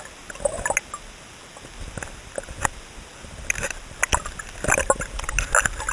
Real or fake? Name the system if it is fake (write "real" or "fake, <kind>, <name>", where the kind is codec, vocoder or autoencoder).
real